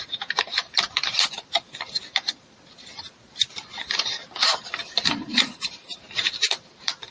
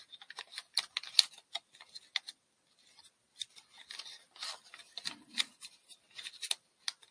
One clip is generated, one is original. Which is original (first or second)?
second